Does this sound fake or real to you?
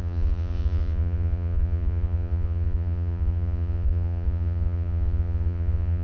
fake